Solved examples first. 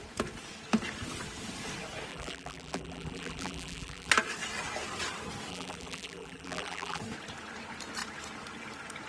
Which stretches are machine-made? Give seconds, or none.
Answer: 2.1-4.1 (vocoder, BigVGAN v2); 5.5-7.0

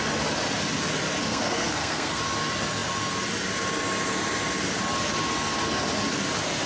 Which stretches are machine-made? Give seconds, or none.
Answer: 1.3-2.2 (codec, SNAC)

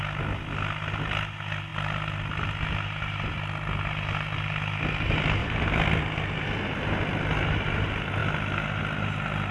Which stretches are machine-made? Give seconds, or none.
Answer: 5.4-6.0 (vocoder, BigVGAN v2)

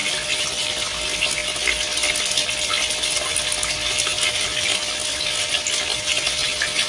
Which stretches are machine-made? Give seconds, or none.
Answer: none